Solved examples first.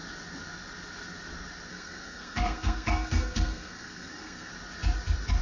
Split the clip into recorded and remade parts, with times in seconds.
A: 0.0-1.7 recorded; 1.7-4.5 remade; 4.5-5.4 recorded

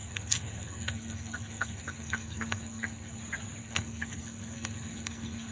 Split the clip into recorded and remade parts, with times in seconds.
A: 0.0-3.2 remade; 3.2-3.6 recorded; 3.6-5.5 remade